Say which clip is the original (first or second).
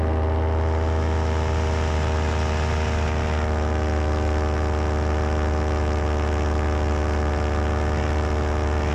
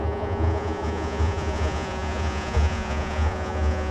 first